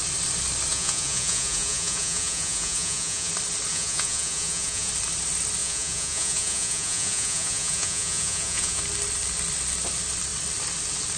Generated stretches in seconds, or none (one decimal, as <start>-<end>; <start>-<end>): 0.7-3.3; 3.7-4.9; 5.6-8.8